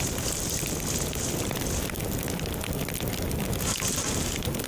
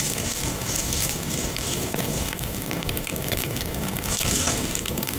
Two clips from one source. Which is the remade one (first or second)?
second